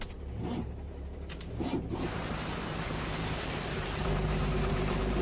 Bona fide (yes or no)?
no